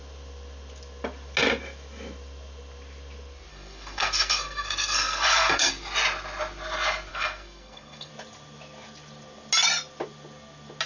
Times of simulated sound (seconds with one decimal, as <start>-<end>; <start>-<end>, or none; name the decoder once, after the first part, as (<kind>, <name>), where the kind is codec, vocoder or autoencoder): 3.5-5.7 (codec, SNAC); 7.1-8.1